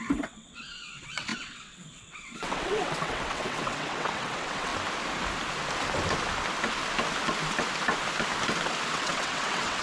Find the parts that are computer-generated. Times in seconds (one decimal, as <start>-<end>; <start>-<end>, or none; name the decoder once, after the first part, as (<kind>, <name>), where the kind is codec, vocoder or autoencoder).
0.0-4.7 (vocoder, WaveNeXt); 8.9-9.8